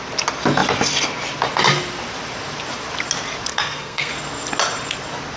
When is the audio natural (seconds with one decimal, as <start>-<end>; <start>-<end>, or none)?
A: 0.0-3.5; 4.1-5.4